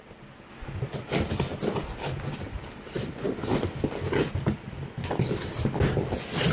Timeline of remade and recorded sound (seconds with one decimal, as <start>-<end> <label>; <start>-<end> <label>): 0.0-6.5 recorded